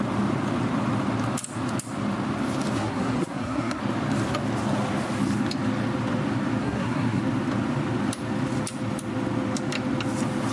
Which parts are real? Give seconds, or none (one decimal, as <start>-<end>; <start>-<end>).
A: 0.0-2.8; 3.8-6.6; 7.2-10.5